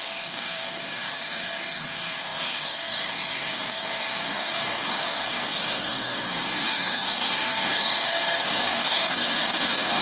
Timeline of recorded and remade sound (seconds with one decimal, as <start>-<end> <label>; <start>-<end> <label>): 0.0-10.0 remade